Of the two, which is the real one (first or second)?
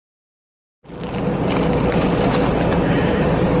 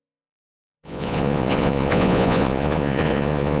first